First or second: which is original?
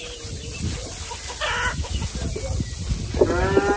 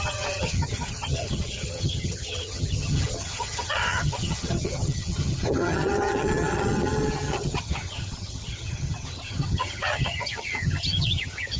first